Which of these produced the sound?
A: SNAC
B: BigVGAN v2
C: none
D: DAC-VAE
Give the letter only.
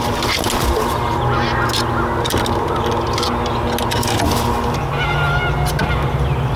C